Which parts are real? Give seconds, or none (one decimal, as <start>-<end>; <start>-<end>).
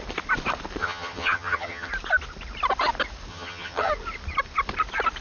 0.0-0.8; 1.9-3.3; 3.9-5.2